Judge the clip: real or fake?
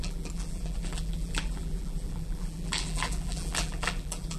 fake